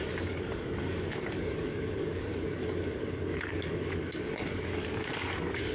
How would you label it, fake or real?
fake